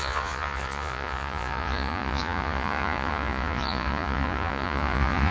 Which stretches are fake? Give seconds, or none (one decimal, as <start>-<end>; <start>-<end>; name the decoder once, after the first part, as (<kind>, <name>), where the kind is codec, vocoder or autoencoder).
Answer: 0.0-5.3 (vocoder, Vocos)